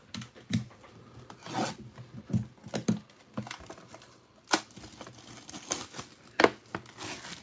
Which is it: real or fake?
real